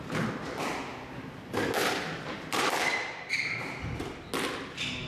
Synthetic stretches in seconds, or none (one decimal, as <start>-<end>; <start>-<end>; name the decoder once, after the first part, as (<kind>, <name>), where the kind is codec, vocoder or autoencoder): 1.8-3.4 (vocoder, BigVGAN v2)